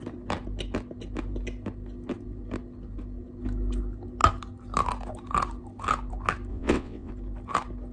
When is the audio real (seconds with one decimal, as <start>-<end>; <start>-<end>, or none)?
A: 0.0-6.5; 7.1-7.9